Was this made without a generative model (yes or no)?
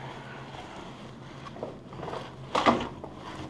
yes